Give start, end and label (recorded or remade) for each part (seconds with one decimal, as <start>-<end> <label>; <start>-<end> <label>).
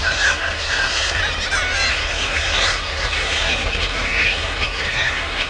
0.0-1.2 remade; 1.2-1.9 recorded; 1.9-5.5 remade